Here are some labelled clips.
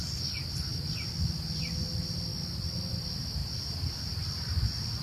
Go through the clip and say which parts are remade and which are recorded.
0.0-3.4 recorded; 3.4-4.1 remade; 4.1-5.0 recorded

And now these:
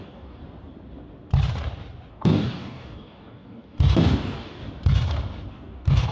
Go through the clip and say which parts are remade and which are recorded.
0.0-0.4 remade; 0.4-2.1 recorded; 2.1-4.6 remade; 4.6-5.5 recorded; 5.5-6.1 remade

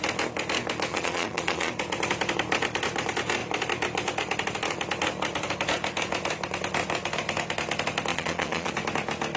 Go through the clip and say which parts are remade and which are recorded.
0.0-0.9 recorded; 0.9-1.7 remade; 1.7-8.1 recorded; 8.1-8.7 remade; 8.7-9.4 recorded

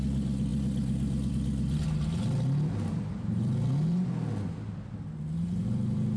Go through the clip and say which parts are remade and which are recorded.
0.0-6.2 recorded

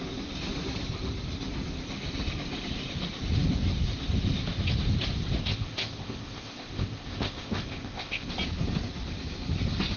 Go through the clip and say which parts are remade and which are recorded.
0.0-5.4 recorded; 5.4-8.3 remade; 8.3-10.0 recorded

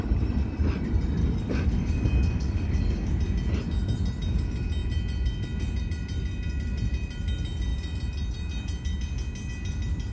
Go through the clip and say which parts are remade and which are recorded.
0.0-1.2 recorded; 1.2-3.1 remade; 3.1-10.1 recorded